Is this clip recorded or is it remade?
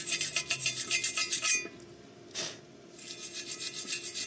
recorded